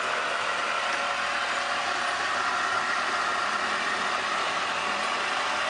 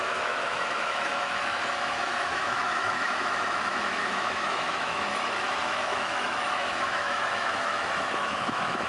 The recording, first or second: first